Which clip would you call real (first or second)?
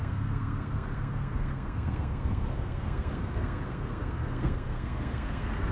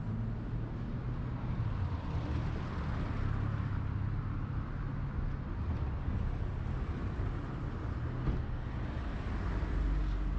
second